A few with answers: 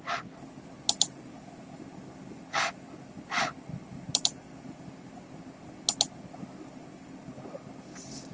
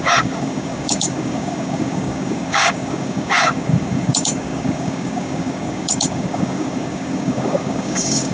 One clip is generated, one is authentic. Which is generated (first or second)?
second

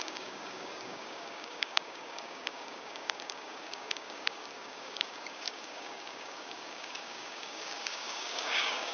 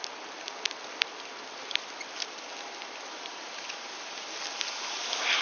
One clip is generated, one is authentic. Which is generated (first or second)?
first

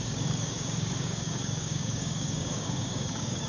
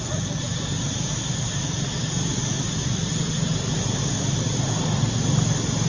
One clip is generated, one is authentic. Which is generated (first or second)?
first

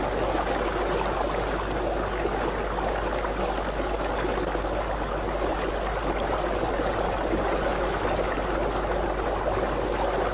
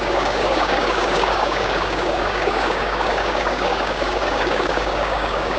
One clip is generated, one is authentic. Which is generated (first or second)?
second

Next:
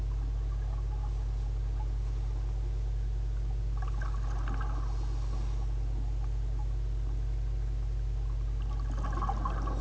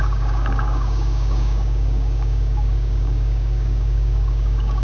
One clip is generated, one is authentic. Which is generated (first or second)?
second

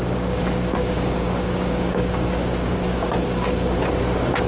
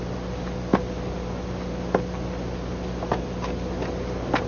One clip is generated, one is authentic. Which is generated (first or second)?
first